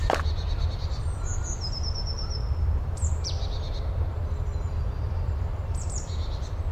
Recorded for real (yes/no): no